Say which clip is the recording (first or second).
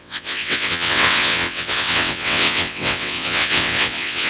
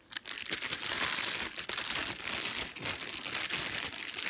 second